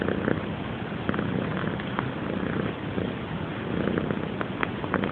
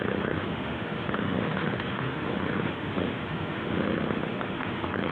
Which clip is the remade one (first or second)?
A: second